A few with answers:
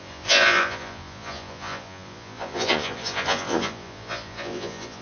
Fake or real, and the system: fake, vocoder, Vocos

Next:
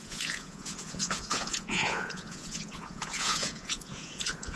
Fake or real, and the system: fake, vocoder, Vocos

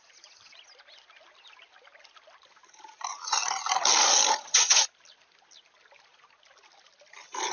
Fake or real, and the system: real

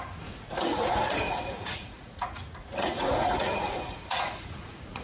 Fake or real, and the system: fake, vocoder, Vocos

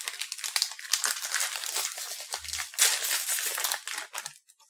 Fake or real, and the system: real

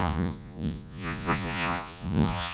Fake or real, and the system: fake, vocoder, Vocos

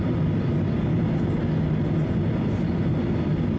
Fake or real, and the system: real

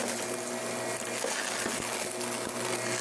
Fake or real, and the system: real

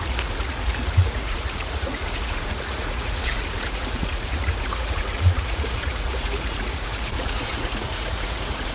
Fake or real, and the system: fake, vocoder, Vocos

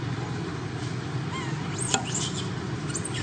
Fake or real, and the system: real